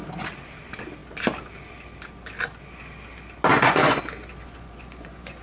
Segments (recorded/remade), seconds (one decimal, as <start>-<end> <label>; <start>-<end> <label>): 0.0-3.5 recorded; 3.5-4.0 remade; 4.0-4.4 recorded; 4.4-5.4 remade